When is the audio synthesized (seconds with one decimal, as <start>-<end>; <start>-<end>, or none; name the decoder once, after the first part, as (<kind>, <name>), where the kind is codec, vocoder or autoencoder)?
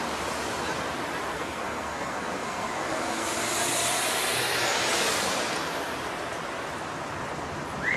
1.3-3.3 (codec, SNAC)